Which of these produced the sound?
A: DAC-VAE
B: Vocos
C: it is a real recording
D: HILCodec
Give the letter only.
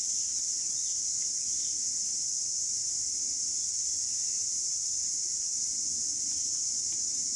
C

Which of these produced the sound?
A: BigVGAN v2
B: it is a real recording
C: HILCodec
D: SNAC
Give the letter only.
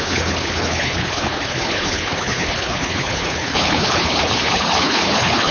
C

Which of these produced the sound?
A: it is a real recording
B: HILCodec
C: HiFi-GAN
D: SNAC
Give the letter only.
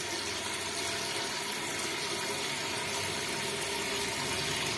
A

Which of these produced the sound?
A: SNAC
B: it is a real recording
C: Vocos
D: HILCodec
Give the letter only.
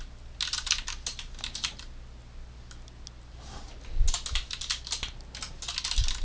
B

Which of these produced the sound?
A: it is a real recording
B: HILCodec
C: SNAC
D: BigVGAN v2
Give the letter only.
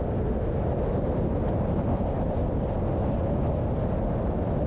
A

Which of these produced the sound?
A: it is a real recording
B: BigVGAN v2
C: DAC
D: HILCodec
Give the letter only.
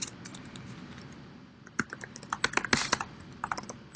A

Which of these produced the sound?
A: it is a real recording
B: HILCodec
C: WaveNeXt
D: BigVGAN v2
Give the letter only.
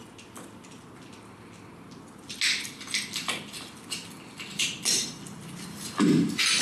A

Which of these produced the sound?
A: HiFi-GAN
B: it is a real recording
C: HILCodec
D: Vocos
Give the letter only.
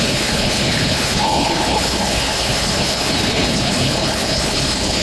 C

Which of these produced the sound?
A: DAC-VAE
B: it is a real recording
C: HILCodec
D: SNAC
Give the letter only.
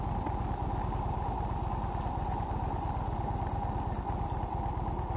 B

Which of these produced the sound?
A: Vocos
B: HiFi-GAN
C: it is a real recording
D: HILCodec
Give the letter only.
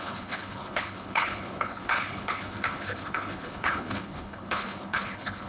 D